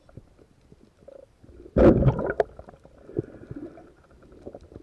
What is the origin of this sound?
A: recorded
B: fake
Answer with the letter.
A